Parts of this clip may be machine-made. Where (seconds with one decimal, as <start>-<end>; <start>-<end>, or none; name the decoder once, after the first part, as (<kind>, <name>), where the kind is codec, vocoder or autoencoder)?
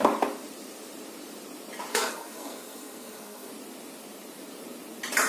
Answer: 1.9-3.5 (codec, SNAC)